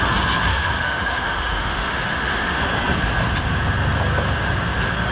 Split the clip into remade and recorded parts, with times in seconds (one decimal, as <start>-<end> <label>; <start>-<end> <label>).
0.0-0.5 recorded; 0.5-2.6 remade; 2.6-5.1 recorded